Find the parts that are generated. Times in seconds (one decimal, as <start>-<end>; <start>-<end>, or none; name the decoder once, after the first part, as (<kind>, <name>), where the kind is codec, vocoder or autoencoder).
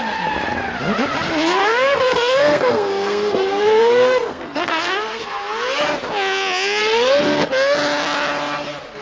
1.6-5.2 (codec, SNAC); 6.8-7.5